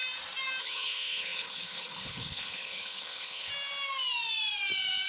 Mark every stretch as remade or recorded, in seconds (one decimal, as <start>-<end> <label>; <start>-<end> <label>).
0.0-0.6 recorded; 0.6-3.5 remade; 3.5-5.1 recorded